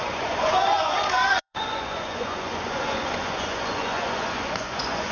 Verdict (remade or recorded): remade